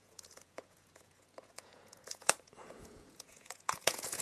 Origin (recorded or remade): remade